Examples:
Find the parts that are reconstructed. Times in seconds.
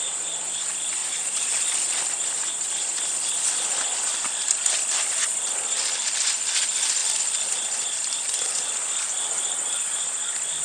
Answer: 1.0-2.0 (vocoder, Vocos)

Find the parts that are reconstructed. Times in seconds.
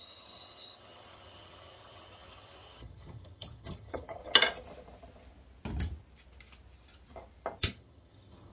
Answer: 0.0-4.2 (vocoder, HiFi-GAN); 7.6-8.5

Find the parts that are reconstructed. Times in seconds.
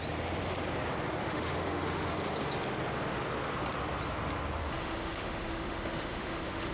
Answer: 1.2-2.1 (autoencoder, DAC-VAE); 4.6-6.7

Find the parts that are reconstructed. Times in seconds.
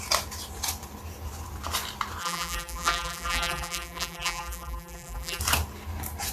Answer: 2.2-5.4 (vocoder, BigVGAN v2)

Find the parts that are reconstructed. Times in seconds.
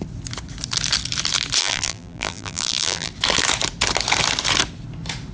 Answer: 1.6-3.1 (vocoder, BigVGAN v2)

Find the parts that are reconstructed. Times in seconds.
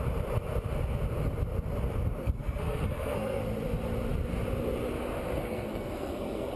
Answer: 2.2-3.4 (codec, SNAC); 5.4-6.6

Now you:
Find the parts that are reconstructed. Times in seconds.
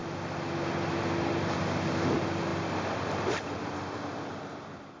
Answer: none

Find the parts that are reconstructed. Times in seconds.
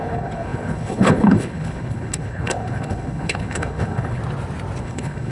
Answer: 0.0-4.2 (codec, HILCodec); 4.8-5.3